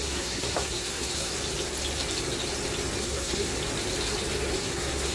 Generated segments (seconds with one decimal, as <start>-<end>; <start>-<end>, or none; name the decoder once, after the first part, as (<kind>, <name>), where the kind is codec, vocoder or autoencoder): 0.0-1.3 (codec, SNAC); 3.0-3.5; 4.6-5.1